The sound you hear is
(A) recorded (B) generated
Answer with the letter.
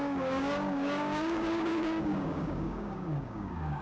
B